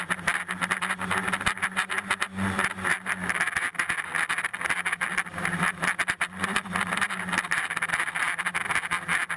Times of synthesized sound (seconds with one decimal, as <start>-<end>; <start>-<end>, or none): 4.5-7.9